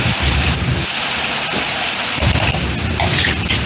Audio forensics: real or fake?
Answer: fake